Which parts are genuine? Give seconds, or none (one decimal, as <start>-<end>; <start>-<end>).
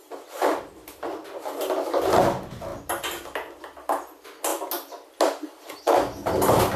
0.0-6.8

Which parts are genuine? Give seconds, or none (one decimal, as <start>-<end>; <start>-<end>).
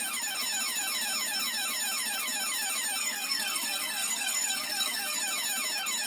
0.0-3.0; 5.2-6.1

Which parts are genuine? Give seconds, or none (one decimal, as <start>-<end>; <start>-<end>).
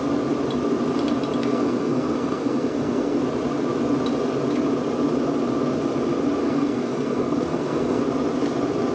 0.0-1.4; 3.2-6.4; 8.0-8.9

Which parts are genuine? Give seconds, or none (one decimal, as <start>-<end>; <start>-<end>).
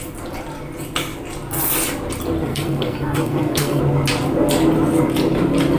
0.0-2.5; 3.8-5.8